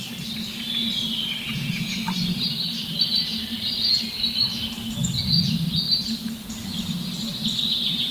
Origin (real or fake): real